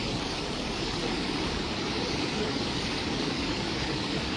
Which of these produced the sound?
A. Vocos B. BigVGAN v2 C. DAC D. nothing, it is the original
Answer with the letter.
C